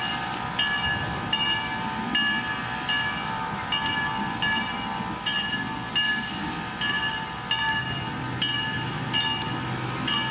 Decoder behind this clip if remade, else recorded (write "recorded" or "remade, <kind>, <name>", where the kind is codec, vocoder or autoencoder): recorded